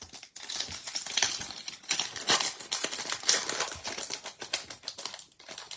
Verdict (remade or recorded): recorded